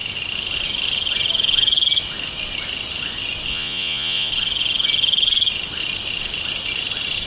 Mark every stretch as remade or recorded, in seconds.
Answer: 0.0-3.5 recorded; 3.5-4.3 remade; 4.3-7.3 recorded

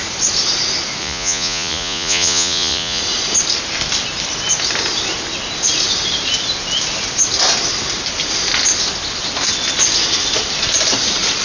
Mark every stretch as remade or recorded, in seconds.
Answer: 0.0-1.0 recorded; 1.0-3.0 remade; 3.0-11.4 recorded

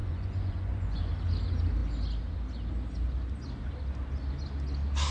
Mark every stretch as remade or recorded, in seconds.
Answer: 0.0-1.1 remade; 1.1-5.1 recorded

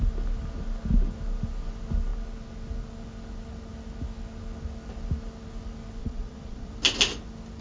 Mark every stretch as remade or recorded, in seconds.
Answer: 0.0-6.0 recorded; 6.0-6.7 remade; 6.7-7.6 recorded